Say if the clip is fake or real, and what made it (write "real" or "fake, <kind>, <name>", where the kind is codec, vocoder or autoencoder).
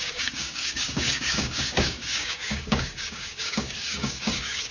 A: fake, codec, DAC